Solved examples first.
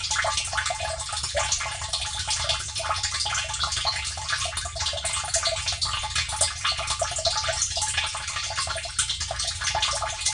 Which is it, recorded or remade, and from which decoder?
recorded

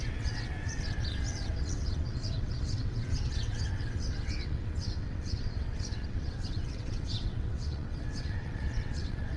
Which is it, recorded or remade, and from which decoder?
remade, vocoder, WaveNeXt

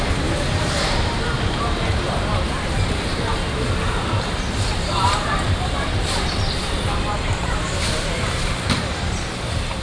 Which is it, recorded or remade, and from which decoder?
remade, vocoder, BigVGAN v2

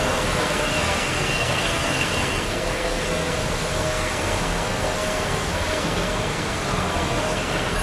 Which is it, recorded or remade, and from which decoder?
remade, codec, SNAC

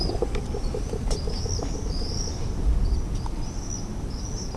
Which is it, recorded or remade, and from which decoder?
recorded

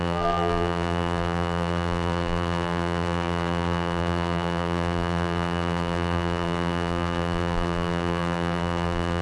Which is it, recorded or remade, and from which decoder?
remade, vocoder, BigVGAN v2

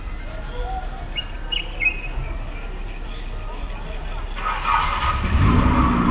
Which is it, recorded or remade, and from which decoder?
recorded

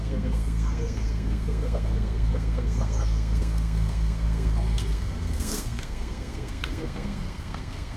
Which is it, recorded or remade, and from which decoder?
remade, codec, SNAC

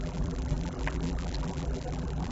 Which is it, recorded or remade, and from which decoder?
remade, vocoder, BigVGAN v2